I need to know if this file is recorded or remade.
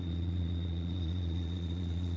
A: remade